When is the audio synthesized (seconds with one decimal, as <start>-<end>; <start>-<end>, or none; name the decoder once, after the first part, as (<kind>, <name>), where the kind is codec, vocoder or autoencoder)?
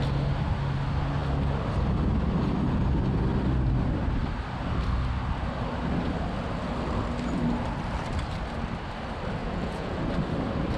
9.4-10.0 (vocoder, Vocos)